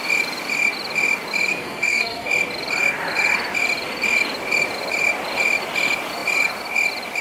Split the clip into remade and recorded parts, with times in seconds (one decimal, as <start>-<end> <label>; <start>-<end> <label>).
0.0-1.5 recorded; 1.5-2.3 remade; 2.3-7.2 recorded